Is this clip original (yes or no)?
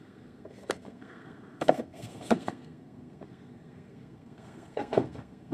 no